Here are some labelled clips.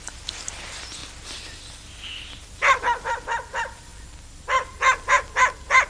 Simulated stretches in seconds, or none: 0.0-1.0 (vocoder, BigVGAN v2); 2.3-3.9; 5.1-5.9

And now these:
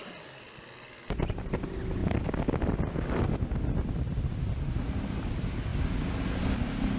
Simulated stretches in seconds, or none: none

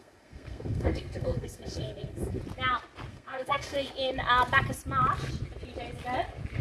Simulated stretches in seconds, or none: 0.0-2.4 (codec, SNAC); 3.1-3.9

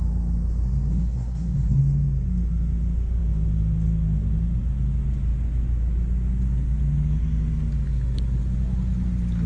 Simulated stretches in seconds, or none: 0.9-1.8 (codec, SNAC)

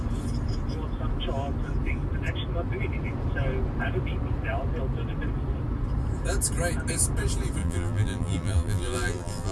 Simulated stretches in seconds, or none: 7.6-9.5 (vocoder, BigVGAN v2)